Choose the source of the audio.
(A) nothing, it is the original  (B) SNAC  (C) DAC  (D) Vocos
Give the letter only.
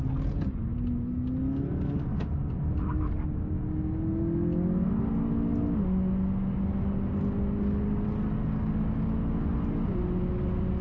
A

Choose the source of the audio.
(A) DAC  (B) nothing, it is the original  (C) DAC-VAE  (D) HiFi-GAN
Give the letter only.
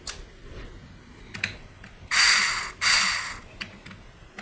B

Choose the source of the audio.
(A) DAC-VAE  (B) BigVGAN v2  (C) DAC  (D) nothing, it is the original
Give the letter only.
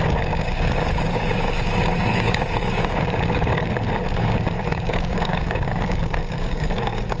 C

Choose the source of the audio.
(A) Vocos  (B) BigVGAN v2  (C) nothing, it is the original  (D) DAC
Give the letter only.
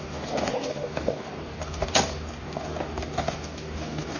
D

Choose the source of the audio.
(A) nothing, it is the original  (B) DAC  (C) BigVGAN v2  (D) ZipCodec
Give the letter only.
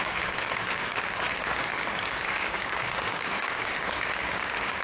B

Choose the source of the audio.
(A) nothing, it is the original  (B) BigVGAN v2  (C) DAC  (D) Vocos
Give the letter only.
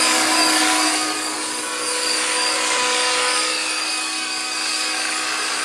C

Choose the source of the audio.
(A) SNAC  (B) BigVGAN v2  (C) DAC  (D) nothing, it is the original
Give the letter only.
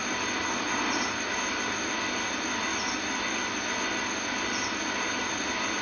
D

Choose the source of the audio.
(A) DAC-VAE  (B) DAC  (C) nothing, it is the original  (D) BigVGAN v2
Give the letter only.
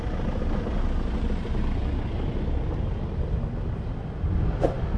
C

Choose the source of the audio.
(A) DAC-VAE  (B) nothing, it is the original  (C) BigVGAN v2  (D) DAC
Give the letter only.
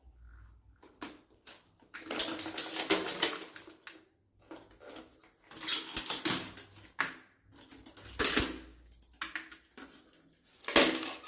B